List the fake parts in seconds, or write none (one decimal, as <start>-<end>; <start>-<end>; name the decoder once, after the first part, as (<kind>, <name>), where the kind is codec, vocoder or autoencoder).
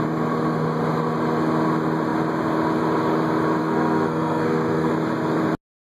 3.6-4.9 (codec, SNAC)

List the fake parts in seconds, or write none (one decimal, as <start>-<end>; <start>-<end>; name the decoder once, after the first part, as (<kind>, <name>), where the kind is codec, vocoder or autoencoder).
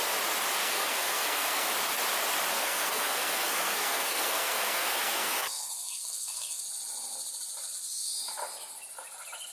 0.6-1.7 (codec, SNAC); 2.5-6.6